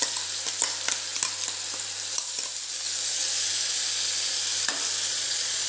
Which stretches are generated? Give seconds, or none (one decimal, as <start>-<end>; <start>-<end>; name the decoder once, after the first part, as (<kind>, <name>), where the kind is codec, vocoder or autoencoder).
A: 5.1-5.7 (vocoder, Vocos)